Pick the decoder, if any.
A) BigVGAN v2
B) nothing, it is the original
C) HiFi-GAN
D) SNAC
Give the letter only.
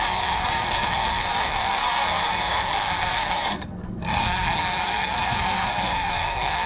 D